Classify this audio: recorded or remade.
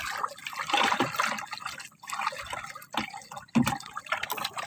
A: recorded